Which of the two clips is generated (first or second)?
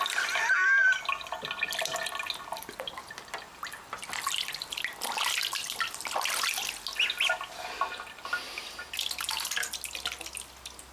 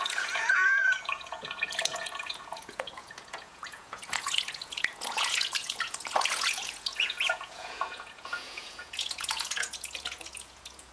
second